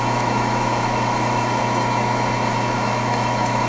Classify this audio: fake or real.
fake